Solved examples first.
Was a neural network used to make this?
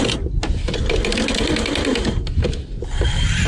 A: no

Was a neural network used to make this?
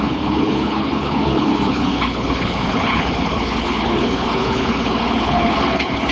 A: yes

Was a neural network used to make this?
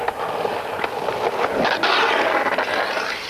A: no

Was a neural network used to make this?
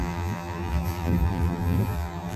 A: yes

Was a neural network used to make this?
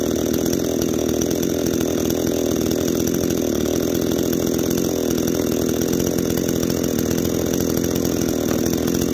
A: no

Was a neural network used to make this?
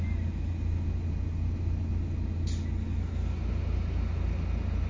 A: no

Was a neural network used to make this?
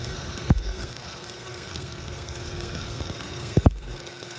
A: yes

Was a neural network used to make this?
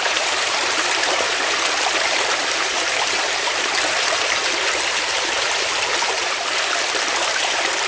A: yes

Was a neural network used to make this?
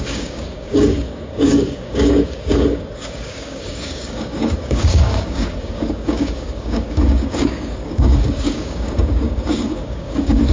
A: yes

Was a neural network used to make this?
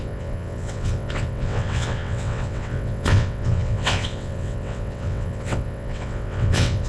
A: yes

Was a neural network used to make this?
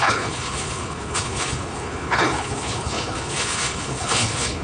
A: yes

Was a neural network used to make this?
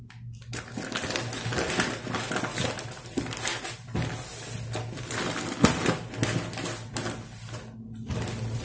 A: no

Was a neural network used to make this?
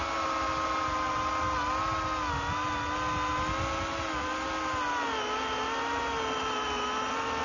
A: no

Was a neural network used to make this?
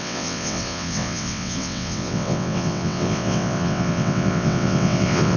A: yes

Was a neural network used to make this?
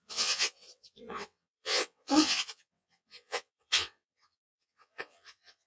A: yes